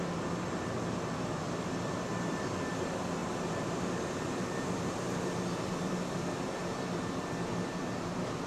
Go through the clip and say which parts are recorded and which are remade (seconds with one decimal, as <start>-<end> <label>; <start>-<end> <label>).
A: 0.0-8.5 recorded